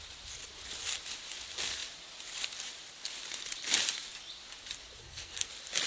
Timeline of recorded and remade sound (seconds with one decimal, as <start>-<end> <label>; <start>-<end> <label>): 0.0-5.0 recorded; 5.0-5.5 remade; 5.5-5.9 recorded